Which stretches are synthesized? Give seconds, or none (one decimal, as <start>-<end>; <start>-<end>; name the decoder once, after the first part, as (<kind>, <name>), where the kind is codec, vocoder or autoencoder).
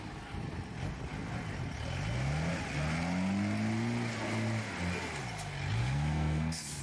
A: 5.8-6.8 (codec, SNAC)